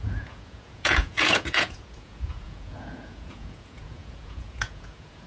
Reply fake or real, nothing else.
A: fake